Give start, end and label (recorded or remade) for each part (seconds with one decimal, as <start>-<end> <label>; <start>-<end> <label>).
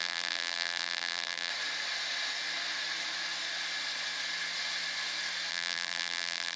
0.0-1.5 remade; 1.5-5.5 recorded; 5.5-6.6 remade